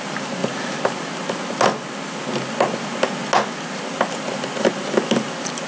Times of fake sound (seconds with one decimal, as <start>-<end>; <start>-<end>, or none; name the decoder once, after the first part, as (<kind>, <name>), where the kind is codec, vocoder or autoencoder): none